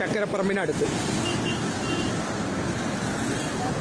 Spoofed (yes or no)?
no